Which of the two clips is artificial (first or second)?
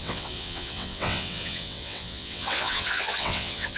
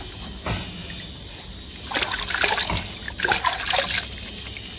first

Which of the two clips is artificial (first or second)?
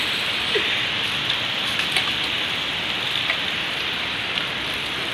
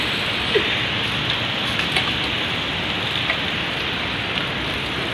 first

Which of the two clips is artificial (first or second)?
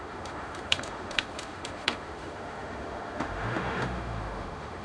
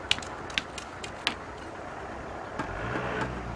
first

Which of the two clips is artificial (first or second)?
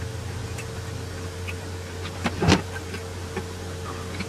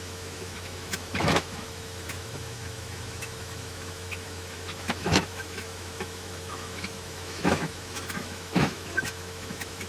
second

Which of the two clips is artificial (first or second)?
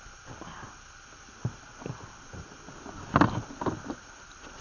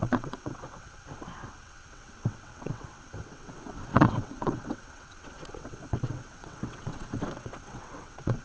second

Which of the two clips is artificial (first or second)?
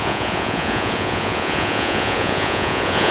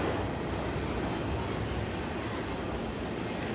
first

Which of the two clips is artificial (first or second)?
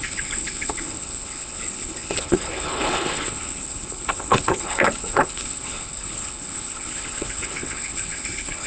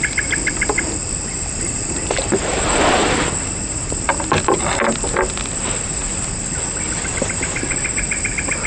first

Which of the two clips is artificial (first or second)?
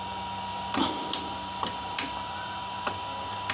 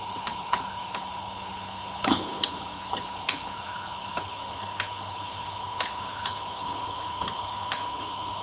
second